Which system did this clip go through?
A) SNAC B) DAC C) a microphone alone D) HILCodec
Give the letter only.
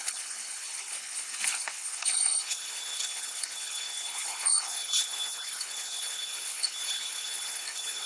D